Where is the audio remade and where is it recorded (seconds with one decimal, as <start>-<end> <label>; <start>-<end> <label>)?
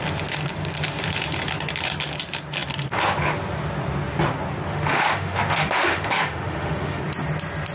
0.0-4.7 recorded; 4.7-7.0 remade; 7.0-7.7 recorded